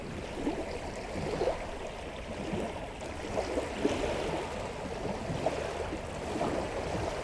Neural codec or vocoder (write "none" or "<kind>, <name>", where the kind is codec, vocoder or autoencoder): none